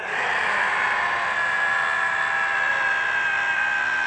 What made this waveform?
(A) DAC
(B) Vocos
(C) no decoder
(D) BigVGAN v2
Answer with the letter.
C